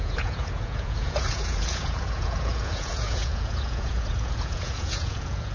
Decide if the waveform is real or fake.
fake